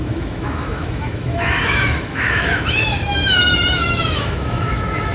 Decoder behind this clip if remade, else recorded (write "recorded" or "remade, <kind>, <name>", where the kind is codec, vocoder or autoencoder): remade, autoencoder, DAC-VAE